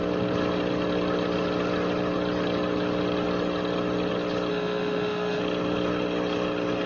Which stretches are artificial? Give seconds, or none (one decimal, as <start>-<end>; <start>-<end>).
4.5-5.4